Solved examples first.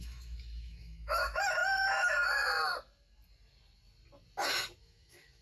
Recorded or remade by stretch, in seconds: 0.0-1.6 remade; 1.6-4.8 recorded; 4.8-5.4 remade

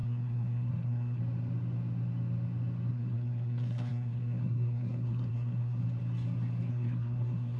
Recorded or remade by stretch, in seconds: 0.0-1.2 remade; 1.2-2.9 recorded; 2.9-5.8 remade; 5.8-6.7 recorded; 6.7-7.6 remade

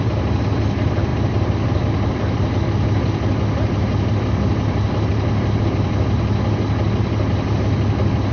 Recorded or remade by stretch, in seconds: 0.0-8.3 recorded

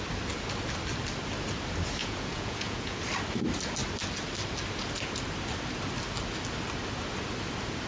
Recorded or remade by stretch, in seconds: 0.0-2.0 recorded; 2.0-3.0 remade; 3.0-7.9 recorded

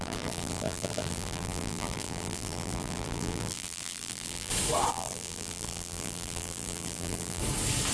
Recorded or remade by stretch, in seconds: 0.0-4.5 remade; 4.5-4.9 recorded; 4.9-7.4 remade; 7.4-7.9 recorded